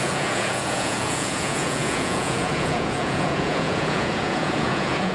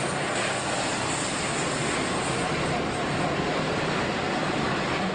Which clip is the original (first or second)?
second